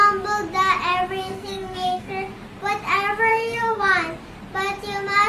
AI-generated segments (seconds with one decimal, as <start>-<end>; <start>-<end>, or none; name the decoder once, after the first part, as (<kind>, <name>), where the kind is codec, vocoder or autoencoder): 1.2-2.1 (codec, SNAC); 3.3-3.8